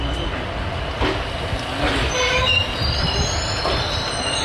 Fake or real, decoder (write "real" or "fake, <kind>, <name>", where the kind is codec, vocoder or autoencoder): real